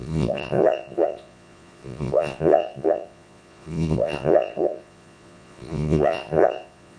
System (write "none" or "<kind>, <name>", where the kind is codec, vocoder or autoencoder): vocoder, Vocos